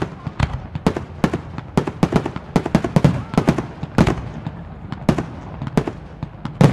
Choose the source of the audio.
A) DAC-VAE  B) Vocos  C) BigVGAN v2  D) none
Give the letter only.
D